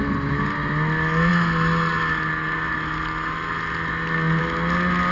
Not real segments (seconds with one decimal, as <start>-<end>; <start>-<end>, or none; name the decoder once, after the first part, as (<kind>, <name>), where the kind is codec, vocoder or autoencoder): none